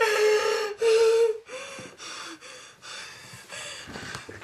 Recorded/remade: recorded